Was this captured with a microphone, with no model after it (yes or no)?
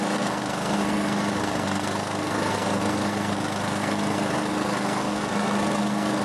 no